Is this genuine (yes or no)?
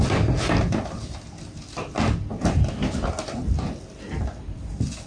yes